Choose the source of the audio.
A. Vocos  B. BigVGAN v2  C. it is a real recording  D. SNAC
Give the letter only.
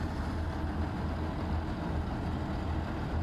C